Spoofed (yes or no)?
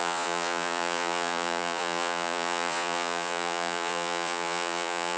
yes